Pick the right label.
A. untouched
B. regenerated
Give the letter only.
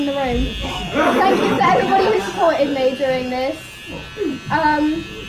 A